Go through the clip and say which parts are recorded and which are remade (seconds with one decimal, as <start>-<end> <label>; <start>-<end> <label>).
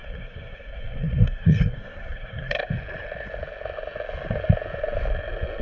0.0-2.6 remade; 2.6-5.6 recorded